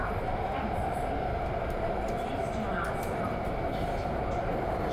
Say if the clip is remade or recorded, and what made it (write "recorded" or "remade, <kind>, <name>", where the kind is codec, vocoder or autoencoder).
remade, vocoder, BigVGAN v2